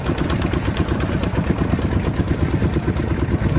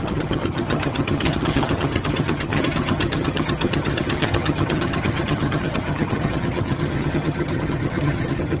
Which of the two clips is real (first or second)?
first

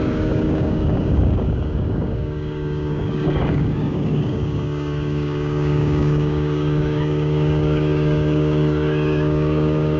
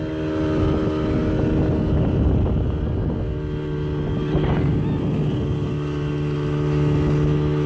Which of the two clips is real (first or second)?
second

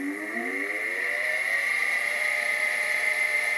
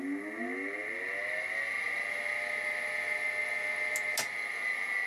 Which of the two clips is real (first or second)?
second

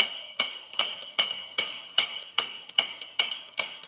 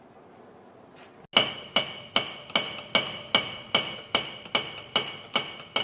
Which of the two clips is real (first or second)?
second